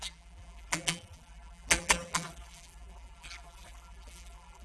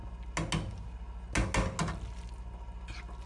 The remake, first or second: first